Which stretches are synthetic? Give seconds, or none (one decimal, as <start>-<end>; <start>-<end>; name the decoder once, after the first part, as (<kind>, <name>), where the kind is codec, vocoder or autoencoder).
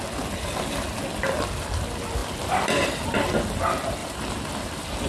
2.2-3.6 (vocoder, BigVGAN v2); 4.0-5.1